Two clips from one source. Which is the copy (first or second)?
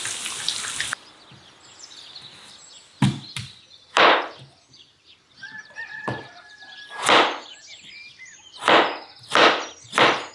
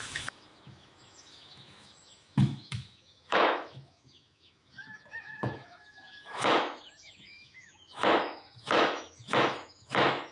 second